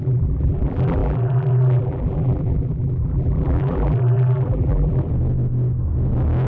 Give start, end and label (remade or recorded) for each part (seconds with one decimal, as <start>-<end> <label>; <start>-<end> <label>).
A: 0.0-5.1 remade; 5.1-6.5 recorded